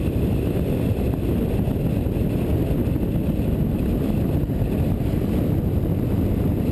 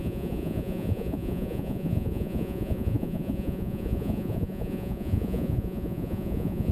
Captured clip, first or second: first